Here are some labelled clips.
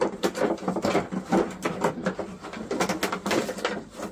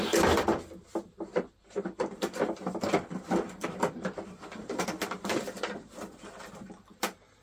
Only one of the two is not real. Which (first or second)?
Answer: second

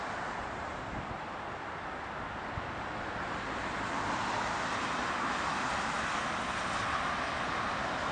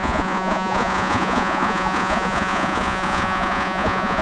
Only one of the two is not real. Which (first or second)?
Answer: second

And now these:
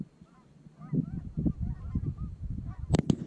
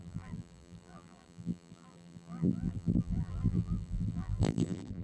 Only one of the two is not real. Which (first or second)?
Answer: second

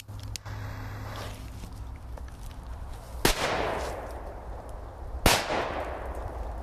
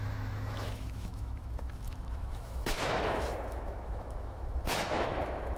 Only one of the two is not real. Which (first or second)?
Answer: second